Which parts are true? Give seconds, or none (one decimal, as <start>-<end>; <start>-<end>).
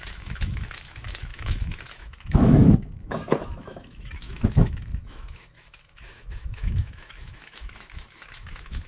none